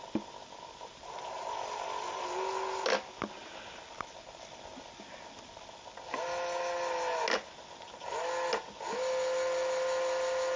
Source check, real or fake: real